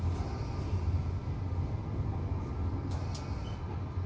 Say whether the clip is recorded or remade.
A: recorded